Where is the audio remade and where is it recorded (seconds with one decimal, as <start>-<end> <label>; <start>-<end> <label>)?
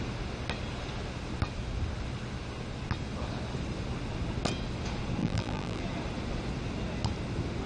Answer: 0.0-5.2 recorded; 5.2-5.8 remade; 5.8-7.7 recorded